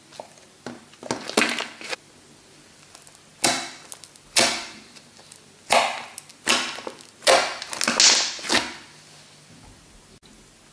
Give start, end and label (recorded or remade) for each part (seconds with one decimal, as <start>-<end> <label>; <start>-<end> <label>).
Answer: 0.0-10.7 recorded